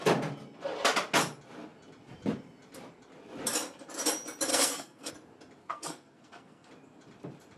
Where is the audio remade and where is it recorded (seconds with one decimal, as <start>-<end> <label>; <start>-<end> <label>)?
0.0-4.5 recorded; 4.5-5.1 remade; 5.1-5.6 recorded; 5.6-6.7 remade; 6.7-7.6 recorded